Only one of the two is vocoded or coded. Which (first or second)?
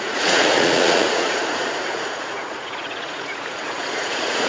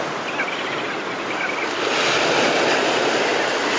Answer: first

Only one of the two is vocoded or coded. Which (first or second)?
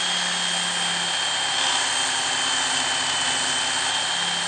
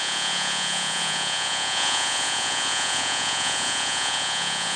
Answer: second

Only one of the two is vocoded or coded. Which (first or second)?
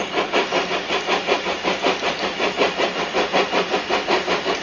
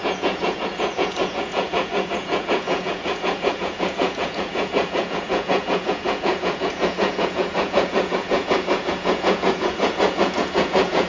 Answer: second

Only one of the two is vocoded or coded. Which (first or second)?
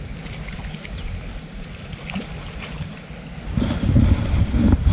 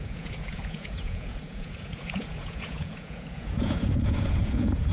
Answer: second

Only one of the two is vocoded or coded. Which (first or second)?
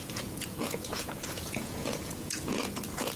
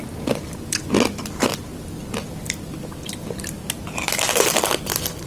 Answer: first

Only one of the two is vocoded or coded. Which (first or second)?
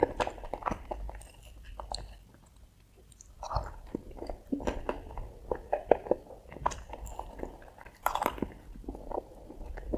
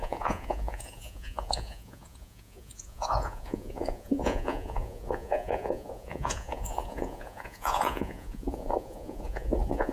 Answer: second